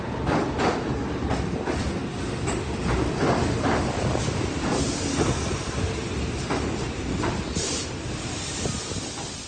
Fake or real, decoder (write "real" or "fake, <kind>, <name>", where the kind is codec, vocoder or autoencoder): real